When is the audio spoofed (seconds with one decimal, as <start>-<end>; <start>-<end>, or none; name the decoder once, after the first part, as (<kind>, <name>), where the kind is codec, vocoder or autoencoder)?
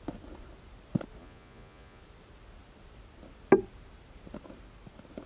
1.2-2.0 (vocoder, Vocos)